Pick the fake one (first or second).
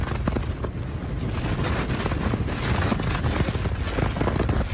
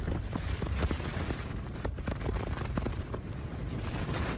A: second